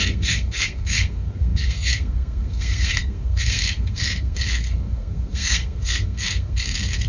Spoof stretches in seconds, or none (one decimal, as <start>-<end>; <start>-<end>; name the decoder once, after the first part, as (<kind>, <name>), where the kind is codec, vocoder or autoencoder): 0.0-7.1 (codec, SNAC)